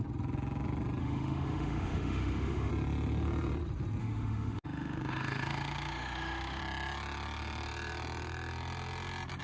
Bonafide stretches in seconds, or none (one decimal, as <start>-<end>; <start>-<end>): 0.0-1.0; 2.7-4.0; 6.6-9.4